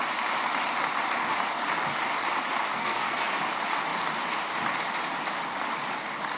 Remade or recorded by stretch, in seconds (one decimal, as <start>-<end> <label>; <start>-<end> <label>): 0.0-2.7 recorded; 2.7-3.3 remade; 3.3-6.4 recorded